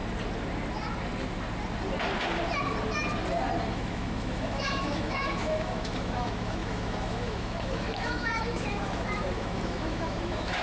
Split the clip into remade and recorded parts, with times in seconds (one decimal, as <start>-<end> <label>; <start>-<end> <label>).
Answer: 0.0-3.7 recorded; 3.7-10.6 remade